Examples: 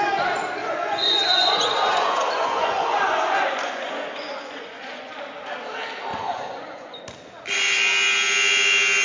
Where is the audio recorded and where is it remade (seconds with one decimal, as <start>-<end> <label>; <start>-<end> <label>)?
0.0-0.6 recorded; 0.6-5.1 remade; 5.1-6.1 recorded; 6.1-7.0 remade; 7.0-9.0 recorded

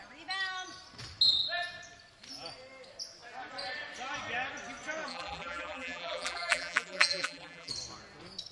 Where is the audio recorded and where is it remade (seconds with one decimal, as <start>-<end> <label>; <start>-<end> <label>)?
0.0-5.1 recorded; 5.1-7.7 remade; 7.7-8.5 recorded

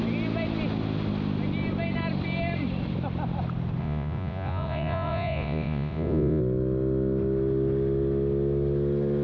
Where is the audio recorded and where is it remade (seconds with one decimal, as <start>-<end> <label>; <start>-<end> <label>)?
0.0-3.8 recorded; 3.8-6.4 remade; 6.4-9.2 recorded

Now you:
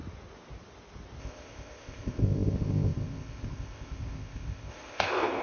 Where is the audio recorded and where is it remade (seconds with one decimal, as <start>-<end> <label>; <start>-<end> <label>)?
0.0-1.2 recorded; 1.2-5.4 remade

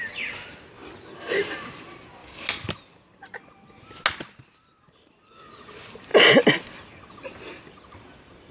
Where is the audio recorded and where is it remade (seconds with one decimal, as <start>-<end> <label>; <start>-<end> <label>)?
0.0-2.2 remade; 2.2-4.9 recorded; 4.9-6.1 remade; 6.1-6.9 recorded; 6.9-8.5 remade

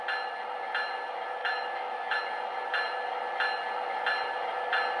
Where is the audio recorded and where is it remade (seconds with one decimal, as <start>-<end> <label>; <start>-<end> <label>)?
0.0-1.4 recorded; 1.4-2.2 remade; 2.2-5.0 recorded

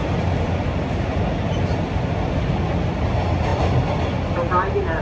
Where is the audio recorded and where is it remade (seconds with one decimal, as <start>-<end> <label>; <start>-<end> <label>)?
0.0-5.0 recorded